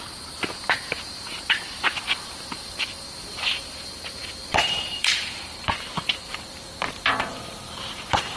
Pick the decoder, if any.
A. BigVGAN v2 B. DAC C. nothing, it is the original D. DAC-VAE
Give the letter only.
A